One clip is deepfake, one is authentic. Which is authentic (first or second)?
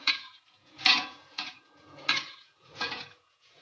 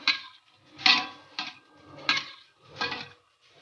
second